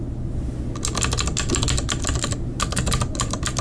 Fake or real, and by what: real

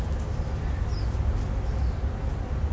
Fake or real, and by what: real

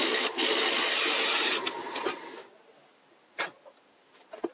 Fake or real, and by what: real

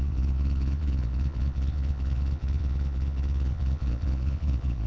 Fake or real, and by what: fake, vocoder, Vocos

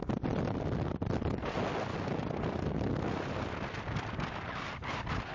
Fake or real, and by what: real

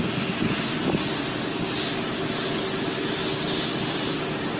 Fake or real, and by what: real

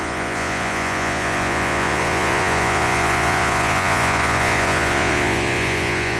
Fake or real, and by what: fake, vocoder, Vocos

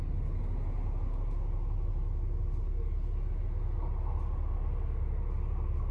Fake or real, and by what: real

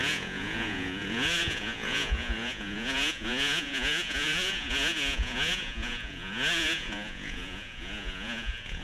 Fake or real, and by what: fake, vocoder, Vocos